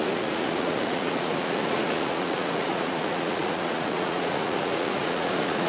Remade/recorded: remade